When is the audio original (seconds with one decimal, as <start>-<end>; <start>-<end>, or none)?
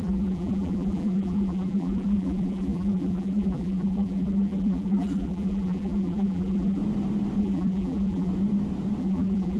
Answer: 6.8-7.4; 8.3-9.0